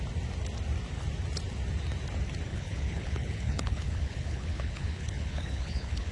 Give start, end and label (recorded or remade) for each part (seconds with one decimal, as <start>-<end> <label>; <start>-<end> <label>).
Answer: 0.0-2.5 recorded; 2.5-6.1 remade